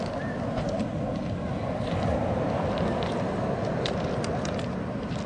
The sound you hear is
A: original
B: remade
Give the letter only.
A